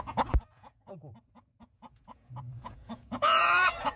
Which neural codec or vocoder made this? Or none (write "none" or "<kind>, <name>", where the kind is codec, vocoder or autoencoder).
vocoder, Vocos